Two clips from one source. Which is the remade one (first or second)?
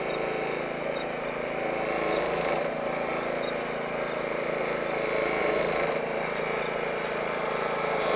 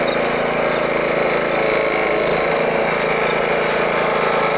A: first